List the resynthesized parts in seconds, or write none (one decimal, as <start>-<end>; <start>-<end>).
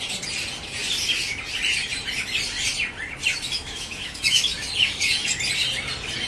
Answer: 3.3-4.7